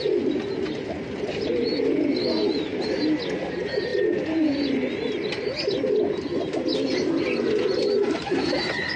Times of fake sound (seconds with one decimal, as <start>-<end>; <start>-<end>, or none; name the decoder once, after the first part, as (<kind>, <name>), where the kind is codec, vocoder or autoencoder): 6.7-8.4 (vocoder, BigVGAN v2)